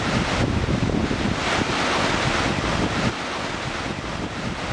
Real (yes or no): yes